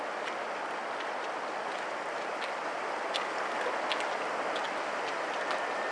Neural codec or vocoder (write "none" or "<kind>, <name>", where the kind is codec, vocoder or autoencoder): none